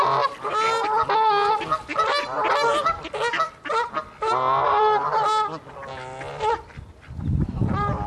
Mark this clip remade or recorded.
recorded